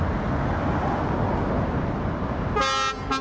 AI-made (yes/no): no